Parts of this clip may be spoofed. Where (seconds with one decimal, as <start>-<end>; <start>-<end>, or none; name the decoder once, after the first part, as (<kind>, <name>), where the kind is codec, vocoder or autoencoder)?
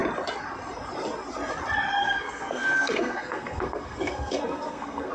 2.0-5.1 (codec, SNAC)